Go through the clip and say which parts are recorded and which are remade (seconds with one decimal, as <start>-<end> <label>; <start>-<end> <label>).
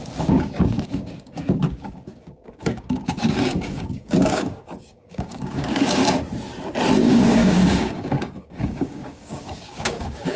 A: 0.0-6.0 remade; 6.0-7.0 recorded; 7.0-10.4 remade